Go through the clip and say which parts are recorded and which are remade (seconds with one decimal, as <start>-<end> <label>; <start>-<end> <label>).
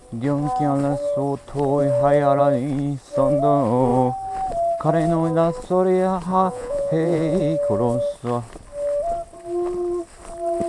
0.0-6.3 recorded; 6.3-7.4 remade; 7.4-10.7 recorded